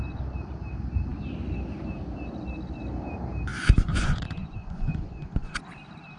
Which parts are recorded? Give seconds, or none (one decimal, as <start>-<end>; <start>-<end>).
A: 0.0-3.5; 5.6-6.2